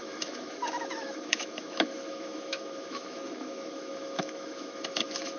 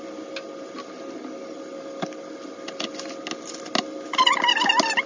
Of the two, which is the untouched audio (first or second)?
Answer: second